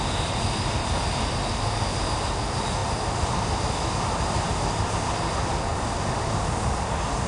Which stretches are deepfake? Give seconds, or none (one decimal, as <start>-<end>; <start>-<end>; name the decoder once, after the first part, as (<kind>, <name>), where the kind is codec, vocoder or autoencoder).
none

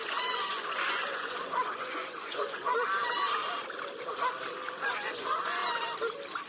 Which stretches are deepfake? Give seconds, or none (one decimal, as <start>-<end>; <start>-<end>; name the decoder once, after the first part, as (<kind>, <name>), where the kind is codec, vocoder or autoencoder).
0.0-2.7 (vocoder, Vocos); 4.7-5.6

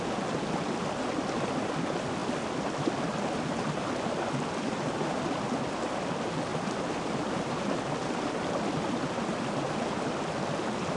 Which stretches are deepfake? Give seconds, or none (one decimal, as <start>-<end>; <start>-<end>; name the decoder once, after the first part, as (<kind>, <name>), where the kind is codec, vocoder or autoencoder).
6.5-7.5 (vocoder, BigVGAN v2)

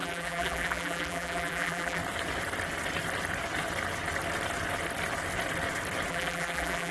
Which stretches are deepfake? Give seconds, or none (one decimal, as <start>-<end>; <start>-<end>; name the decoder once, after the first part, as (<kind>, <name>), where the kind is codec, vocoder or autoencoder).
0.0-2.0 (vocoder, BigVGAN v2); 6.1-6.9

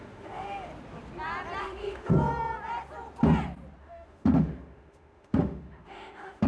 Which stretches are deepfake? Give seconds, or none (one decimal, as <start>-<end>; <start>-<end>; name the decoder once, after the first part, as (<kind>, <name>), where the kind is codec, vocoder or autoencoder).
0.0-0.7 (autoencoder, DAC-VAE); 1.6-2.1; 3.8-6.5

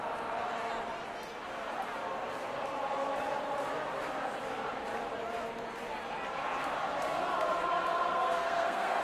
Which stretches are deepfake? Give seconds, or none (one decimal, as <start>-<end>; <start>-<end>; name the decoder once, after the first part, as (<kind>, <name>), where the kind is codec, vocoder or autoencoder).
8.1-9.0 (codec, SNAC)

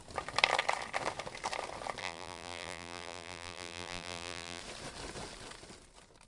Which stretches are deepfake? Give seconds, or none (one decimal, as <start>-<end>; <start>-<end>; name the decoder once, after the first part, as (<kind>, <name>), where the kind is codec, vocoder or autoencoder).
2.0-4.6 (vocoder, BigVGAN v2)

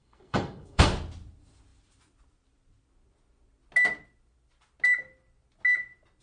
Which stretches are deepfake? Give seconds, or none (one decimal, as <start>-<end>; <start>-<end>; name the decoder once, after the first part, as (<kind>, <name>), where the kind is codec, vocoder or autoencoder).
0.0-0.9 (codec, SNAC)